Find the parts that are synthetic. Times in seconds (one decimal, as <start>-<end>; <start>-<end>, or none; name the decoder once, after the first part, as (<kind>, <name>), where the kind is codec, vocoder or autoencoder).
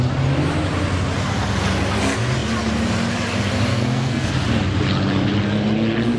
3.7-4.3 (codec, SNAC)